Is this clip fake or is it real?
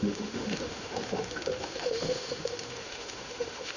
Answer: fake